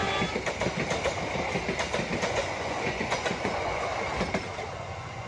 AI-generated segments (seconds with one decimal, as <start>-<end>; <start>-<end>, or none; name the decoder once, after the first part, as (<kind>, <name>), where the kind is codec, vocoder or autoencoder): 2.2-3.9 (vocoder, Vocos); 4.7-5.3